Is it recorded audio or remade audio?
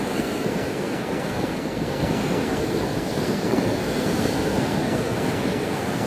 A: remade